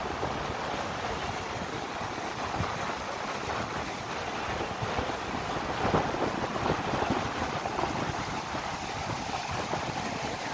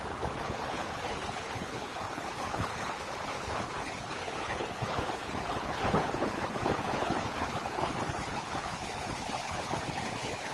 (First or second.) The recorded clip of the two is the first